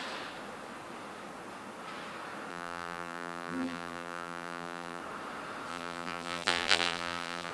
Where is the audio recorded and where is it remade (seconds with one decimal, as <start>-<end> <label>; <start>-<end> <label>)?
0.0-2.5 recorded; 2.5-5.0 remade; 5.0-5.7 recorded; 5.7-7.5 remade